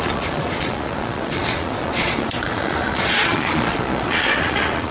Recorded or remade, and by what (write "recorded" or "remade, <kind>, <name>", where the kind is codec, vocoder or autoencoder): remade, vocoder, Vocos